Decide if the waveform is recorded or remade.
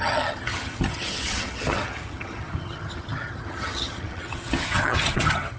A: remade